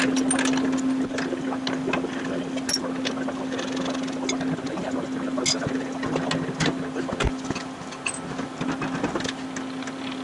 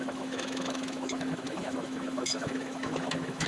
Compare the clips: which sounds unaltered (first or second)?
first